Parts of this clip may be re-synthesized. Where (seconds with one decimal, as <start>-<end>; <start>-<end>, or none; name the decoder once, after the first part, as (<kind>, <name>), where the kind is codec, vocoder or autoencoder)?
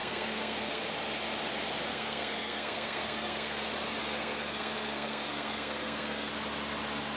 0.0-0.8 (codec, SNAC); 1.9-3.6; 4.0-6.3